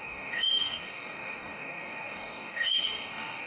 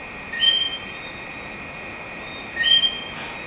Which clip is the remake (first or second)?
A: first